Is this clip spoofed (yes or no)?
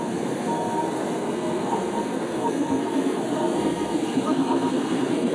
yes